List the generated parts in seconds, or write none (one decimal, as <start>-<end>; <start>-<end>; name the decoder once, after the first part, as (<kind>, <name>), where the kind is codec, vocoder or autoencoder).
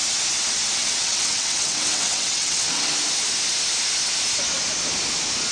0.8-2.9 (vocoder, WaveNeXt)